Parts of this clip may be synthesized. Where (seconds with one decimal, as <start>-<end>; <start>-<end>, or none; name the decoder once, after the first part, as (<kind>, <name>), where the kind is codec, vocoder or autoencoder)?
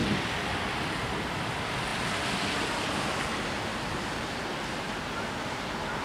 3.7-5.1 (vocoder, BigVGAN v2)